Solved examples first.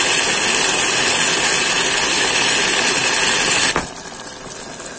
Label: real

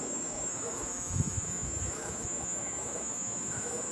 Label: fake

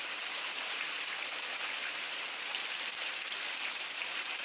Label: real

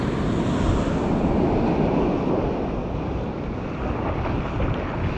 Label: real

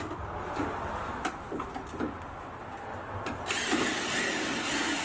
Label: real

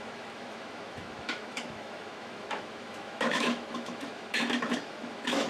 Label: fake